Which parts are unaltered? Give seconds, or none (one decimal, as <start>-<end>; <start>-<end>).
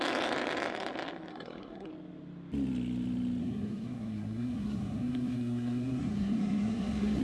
0.0-1.3; 1.9-3.4